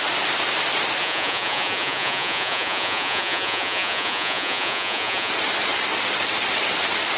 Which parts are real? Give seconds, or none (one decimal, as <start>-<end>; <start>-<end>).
0.0-1.0; 5.3-7.2